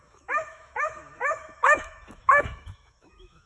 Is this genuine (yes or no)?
no